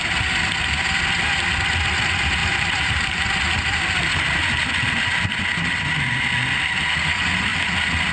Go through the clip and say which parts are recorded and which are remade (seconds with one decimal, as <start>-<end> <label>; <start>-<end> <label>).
0.0-2.4 recorded; 2.4-3.8 remade; 3.8-8.1 recorded